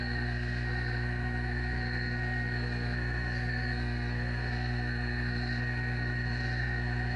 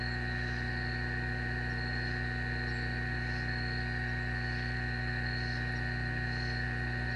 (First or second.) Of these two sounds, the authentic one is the second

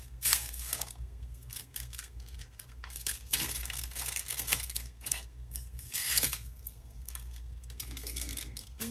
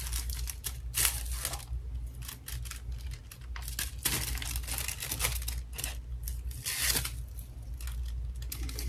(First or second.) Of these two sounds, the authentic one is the second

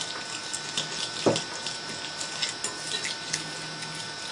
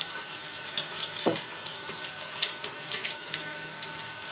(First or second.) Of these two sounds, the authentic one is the first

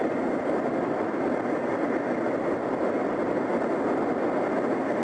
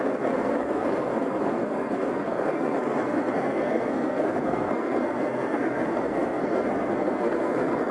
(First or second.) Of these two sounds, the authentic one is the first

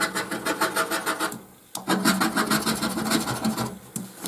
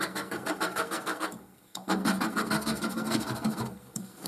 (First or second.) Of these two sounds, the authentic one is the first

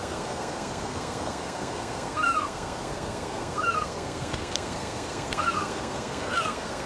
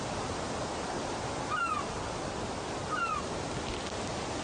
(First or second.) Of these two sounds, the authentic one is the second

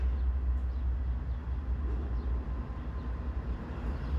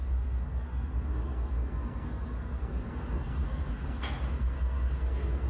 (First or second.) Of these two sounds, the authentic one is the first